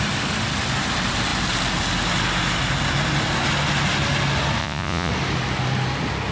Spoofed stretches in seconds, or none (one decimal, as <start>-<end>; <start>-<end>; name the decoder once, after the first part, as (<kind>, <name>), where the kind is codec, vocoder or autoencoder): 4.6-5.1 (vocoder, Vocos)